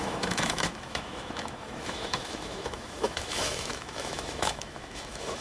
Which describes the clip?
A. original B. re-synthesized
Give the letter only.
B